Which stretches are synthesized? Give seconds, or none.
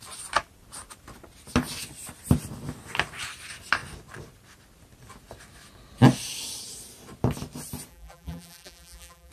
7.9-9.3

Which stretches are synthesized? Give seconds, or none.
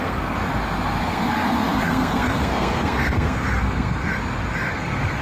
0.0-0.4; 1.0-4.1; 4.7-5.2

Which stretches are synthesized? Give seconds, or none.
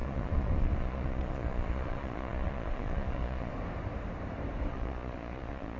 0.0-3.5; 4.7-5.8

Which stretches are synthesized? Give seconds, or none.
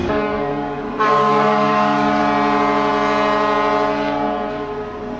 0.0-2.2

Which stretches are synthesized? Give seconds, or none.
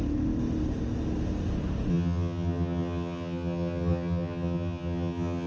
1.9-5.5